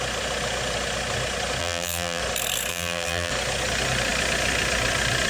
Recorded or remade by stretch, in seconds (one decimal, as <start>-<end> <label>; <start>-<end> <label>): 0.0-1.6 recorded; 1.6-2.2 remade; 2.2-2.7 recorded; 2.7-3.3 remade; 3.3-5.3 recorded